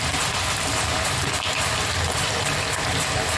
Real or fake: real